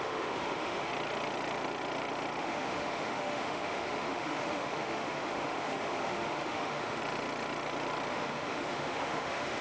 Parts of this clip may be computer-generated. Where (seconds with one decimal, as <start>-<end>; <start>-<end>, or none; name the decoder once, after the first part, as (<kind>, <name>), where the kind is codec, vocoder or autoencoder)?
0.0-0.9 (autoencoder, DAC-VAE); 2.4-7.0; 8.1-9.6